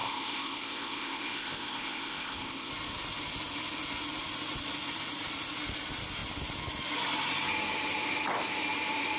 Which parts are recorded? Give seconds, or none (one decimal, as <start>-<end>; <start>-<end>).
2.7-9.2